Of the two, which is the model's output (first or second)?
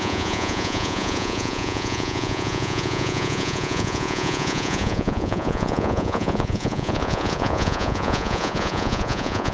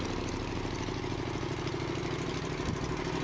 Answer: first